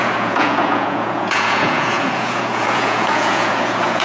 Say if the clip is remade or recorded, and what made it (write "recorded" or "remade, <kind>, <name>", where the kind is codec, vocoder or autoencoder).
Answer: remade, vocoder, Vocos